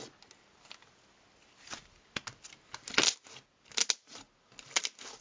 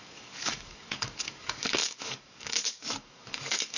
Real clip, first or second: first